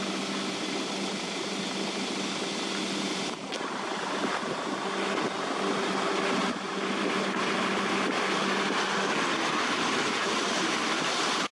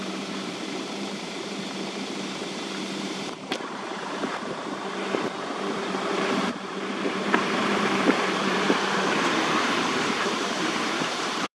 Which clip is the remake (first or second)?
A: second